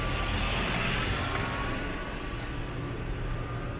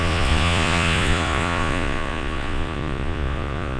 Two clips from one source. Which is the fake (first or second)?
second